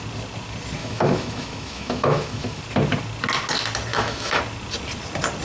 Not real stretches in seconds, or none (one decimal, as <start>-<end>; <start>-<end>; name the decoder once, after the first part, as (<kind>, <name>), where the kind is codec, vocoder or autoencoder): 0.8-2.6 (autoencoder, DAC-VAE); 3.9-4.4